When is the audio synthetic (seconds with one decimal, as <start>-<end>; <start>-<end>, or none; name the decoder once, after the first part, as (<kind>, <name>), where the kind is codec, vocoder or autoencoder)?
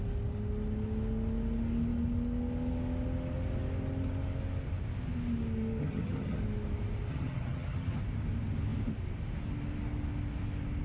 5.8-6.4 (vocoder, HiFi-GAN); 7.1-8.0